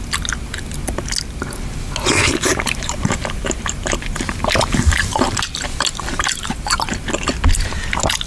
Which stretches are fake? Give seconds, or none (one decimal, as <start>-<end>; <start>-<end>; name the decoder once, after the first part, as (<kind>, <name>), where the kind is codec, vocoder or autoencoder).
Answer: 2.5-6.9 (vocoder, BigVGAN v2)